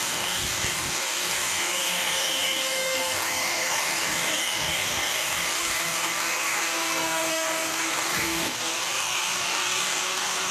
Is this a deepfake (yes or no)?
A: yes